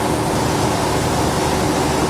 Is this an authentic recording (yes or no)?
yes